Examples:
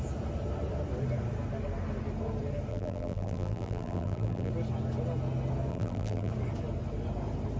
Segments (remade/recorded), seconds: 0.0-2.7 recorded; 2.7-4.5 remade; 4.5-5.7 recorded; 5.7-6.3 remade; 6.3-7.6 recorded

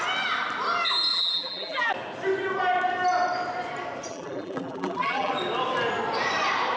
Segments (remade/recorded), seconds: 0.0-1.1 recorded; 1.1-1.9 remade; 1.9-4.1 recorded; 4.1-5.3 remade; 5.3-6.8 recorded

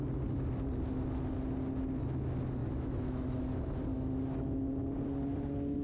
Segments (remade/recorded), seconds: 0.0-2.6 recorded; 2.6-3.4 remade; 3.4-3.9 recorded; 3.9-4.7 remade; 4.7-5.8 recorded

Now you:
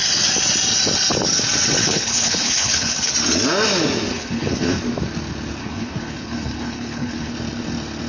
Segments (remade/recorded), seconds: 0.0-1.8 recorded; 1.8-3.1 remade; 3.1-4.1 recorded; 4.1-4.8 remade; 4.8-5.6 recorded; 5.6-7.3 remade; 7.3-8.1 recorded